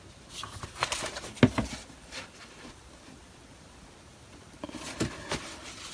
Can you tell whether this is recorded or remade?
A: recorded